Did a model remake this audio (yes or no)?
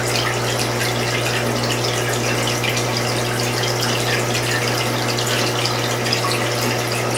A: no